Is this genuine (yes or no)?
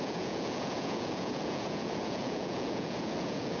no